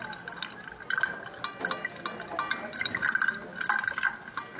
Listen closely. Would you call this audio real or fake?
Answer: real